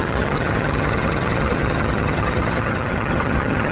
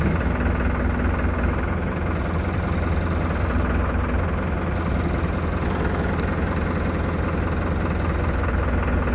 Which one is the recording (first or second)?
second